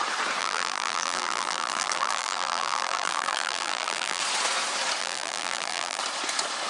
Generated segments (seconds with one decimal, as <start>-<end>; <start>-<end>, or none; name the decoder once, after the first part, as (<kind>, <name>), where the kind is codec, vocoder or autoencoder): 0.4-4.2 (vocoder, BigVGAN v2); 5.0-6.0